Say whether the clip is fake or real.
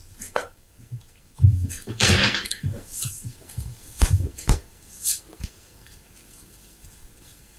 fake